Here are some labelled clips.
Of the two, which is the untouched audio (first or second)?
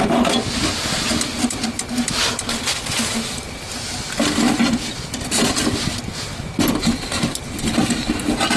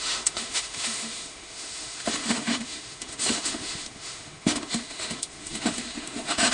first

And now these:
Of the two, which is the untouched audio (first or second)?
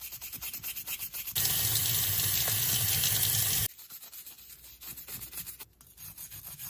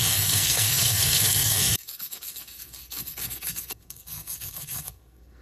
first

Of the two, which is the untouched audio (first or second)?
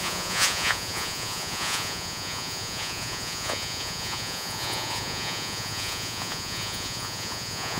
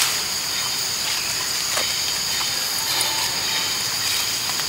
second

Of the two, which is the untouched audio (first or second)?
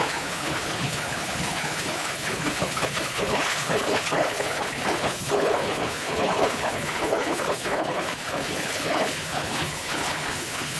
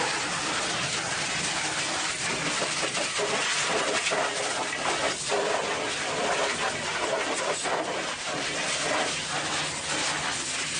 second